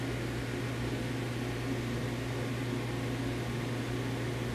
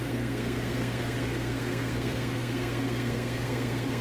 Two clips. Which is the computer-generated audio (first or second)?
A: second